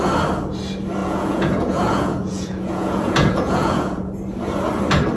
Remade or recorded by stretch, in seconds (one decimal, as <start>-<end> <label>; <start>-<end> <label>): 0.0-1.0 recorded; 1.0-4.1 remade; 4.1-5.2 recorded